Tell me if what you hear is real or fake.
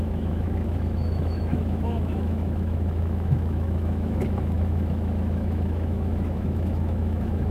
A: fake